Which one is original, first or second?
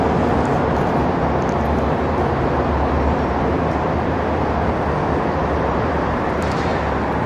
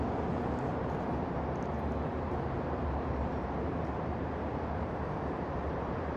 first